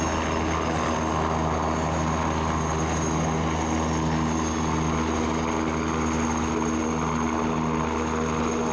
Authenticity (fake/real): real